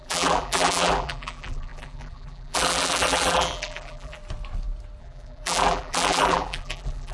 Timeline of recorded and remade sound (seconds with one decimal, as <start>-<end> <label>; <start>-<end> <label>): 0.0-4.2 remade; 4.2-5.0 recorded; 5.0-7.1 remade